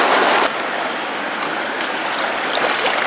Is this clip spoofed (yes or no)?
no